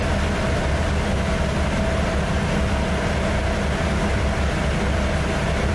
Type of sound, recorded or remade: recorded